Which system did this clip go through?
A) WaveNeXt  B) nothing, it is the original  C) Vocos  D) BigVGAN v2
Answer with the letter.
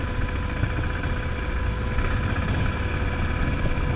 B